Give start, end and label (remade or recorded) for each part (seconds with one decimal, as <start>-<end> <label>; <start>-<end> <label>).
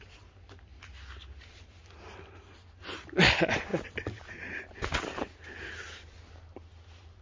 0.0-7.2 recorded